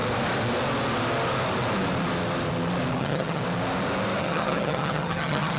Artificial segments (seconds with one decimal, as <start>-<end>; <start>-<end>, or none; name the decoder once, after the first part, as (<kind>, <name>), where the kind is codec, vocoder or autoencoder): 3.0-3.4 (vocoder, HiFi-GAN); 4.2-5.6